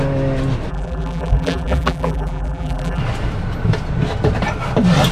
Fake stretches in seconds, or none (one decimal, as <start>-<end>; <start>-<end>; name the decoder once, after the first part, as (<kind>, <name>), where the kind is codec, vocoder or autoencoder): 0.7-3.0 (vocoder, BigVGAN v2)